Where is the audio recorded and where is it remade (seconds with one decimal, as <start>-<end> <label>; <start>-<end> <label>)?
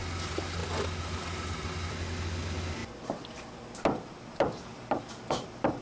0.0-5.8 recorded